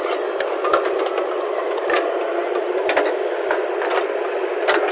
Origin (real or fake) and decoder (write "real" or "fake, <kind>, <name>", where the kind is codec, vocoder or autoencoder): real